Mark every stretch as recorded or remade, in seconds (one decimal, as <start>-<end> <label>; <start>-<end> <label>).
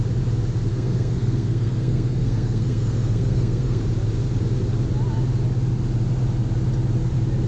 0.0-0.7 recorded; 0.7-3.8 remade; 3.8-7.5 recorded